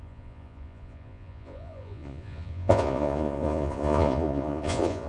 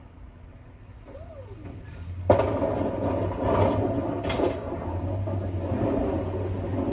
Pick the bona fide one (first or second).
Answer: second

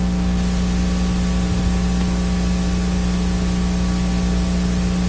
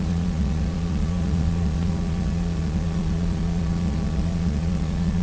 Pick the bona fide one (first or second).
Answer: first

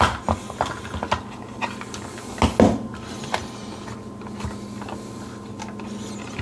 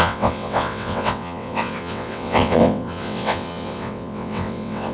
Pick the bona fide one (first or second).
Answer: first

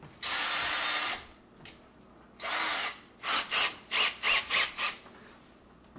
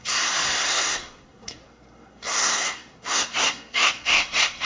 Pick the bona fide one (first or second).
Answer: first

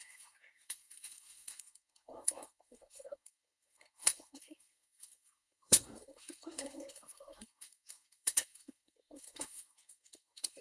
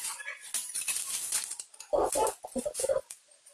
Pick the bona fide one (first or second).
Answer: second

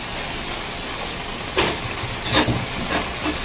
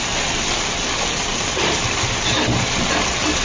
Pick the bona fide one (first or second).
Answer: first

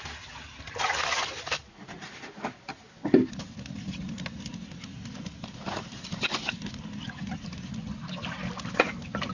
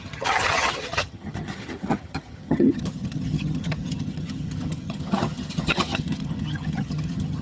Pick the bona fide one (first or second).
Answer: first